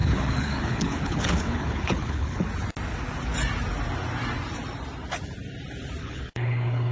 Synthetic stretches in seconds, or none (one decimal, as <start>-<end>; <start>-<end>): 0.0-2.5; 6.0-6.9